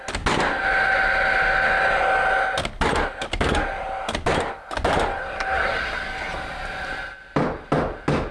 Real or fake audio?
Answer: real